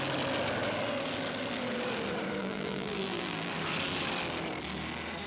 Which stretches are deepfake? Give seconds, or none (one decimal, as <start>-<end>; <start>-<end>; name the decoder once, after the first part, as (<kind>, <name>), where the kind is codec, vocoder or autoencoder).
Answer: 2.4-3.5 (vocoder, BigVGAN v2)